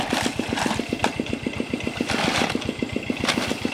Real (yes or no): yes